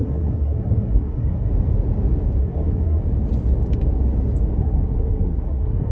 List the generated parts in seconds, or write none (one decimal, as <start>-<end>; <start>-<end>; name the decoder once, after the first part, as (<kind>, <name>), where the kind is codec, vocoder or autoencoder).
0.0-1.5 (codec, SNAC); 2.4-3.0; 4.6-5.9